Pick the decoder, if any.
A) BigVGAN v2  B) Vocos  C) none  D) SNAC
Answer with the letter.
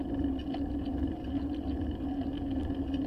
C